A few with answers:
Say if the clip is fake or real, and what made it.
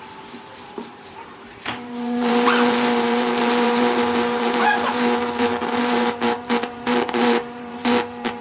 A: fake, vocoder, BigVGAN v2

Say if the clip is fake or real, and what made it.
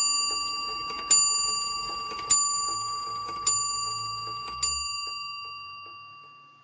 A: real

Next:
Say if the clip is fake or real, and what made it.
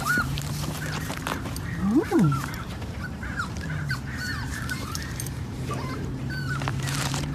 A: fake, vocoder, BigVGAN v2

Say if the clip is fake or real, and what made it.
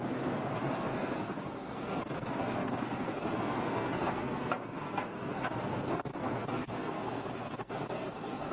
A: fake, codec, SNAC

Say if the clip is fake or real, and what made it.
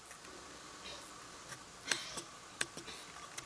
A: real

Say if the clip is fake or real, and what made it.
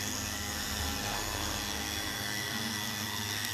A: fake, codec, SNAC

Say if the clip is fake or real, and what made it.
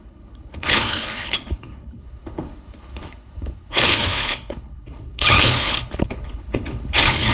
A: fake, codec, HILCodec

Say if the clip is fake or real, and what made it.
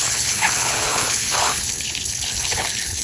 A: fake, codec, HILCodec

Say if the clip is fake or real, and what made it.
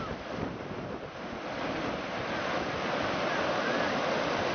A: fake, vocoder, BigVGAN v2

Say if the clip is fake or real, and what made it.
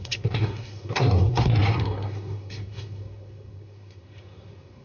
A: fake, codec, SNAC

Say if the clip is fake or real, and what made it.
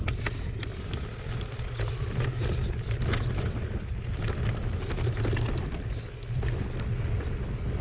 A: real